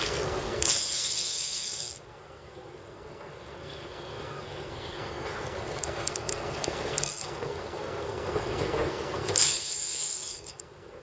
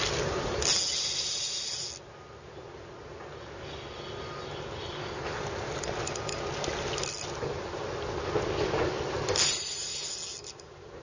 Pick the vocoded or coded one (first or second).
first